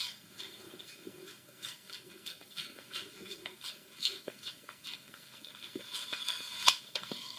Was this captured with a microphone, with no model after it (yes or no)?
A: no